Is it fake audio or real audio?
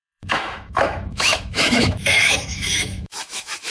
fake